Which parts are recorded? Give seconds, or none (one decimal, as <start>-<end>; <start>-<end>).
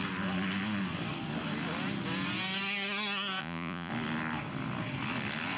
0.0-3.4; 3.9-5.6